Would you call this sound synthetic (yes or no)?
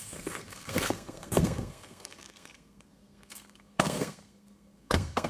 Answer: yes